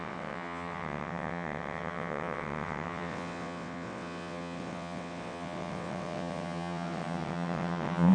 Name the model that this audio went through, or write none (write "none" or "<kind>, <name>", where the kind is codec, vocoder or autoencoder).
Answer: vocoder, WaveNeXt